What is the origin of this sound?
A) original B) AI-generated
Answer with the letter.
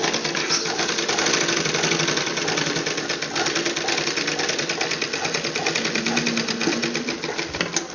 A